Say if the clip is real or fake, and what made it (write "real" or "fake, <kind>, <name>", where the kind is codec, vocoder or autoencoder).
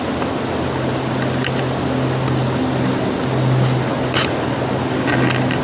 real